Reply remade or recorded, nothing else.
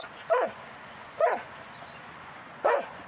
remade